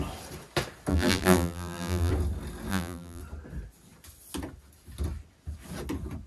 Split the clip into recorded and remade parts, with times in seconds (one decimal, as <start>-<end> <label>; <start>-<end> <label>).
0.0-0.9 recorded; 0.9-2.1 remade; 2.1-2.7 recorded; 2.7-3.2 remade; 3.2-6.3 recorded